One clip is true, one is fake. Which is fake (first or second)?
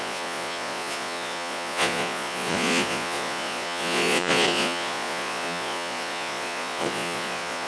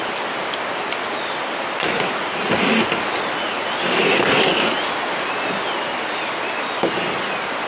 first